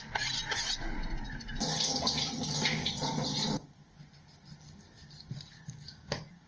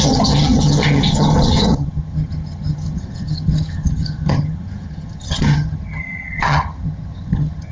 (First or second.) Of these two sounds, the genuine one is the first